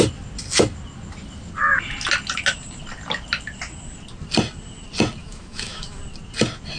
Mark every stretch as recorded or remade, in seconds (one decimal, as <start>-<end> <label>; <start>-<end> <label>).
0.0-5.2 recorded; 5.2-6.0 remade; 6.0-6.8 recorded